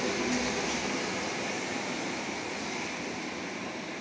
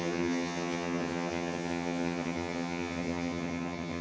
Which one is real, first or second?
first